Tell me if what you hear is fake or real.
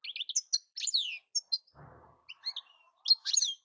real